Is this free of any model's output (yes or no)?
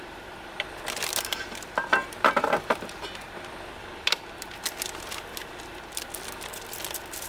no